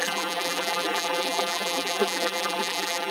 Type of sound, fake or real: fake